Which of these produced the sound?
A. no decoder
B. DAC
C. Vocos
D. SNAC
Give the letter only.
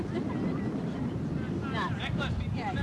A